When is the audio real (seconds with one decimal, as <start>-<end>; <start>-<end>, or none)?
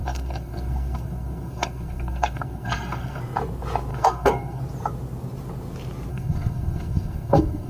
3.2-3.9; 4.6-6.1